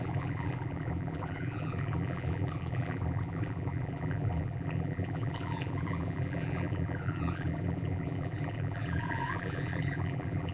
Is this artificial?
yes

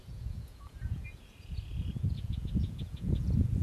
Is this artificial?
yes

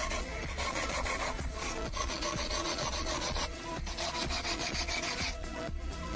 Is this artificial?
yes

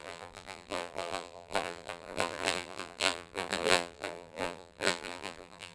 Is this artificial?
yes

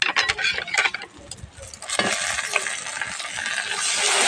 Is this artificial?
no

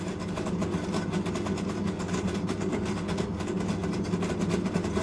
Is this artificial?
no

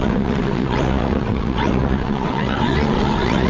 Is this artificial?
yes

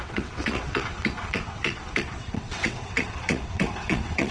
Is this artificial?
yes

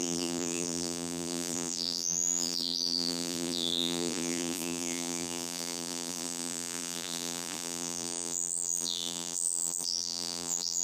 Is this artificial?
yes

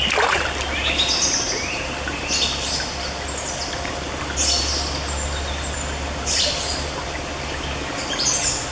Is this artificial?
no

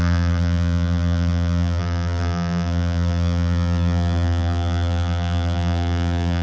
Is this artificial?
yes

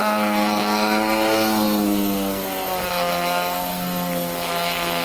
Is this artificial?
yes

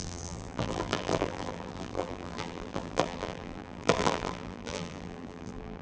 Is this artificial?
yes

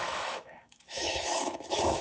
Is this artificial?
yes